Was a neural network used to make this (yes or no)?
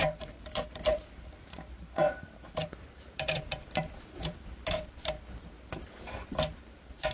yes